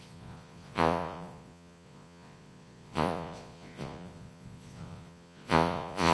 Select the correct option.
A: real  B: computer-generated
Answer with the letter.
B